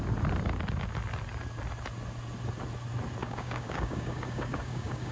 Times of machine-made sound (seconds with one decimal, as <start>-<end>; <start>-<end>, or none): 3.2-5.1